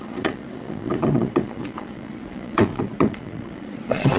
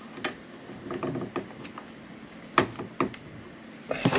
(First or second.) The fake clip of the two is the first